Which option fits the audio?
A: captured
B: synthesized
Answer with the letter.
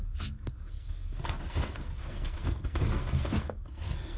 B